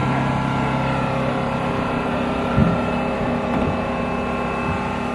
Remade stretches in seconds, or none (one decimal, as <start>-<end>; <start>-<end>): none